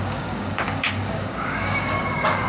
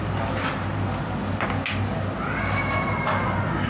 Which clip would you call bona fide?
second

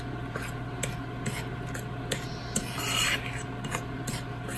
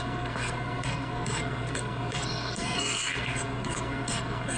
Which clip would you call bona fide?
first